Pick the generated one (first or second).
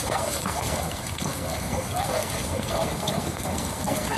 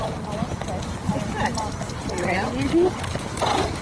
first